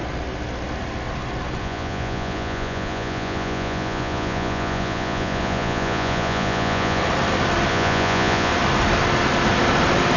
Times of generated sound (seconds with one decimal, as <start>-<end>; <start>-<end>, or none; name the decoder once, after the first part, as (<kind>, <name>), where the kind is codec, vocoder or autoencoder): 1.6-7.0 (vocoder, Vocos); 7.7-8.5